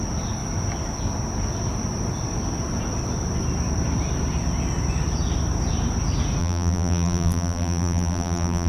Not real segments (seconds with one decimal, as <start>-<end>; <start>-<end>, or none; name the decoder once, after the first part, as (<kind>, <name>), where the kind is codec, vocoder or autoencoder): 6.4-8.7 (vocoder, BigVGAN v2)